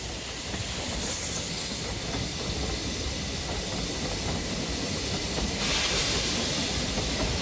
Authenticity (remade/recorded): recorded